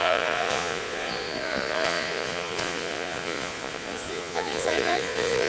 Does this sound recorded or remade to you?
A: remade